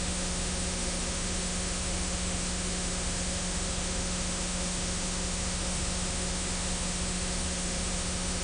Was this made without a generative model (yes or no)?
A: no